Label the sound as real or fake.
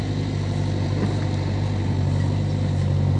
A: real